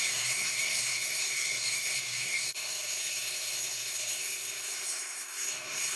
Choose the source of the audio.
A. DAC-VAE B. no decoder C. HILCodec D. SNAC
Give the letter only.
D